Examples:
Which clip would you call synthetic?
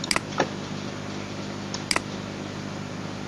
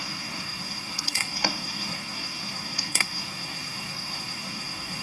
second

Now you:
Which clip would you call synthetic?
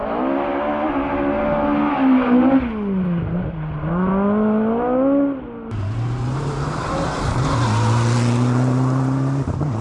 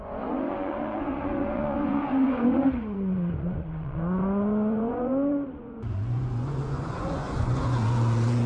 second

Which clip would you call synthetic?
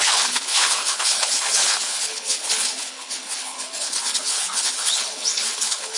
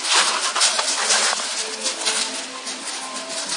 first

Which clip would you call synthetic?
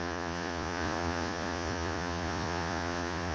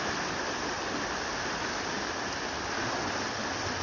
first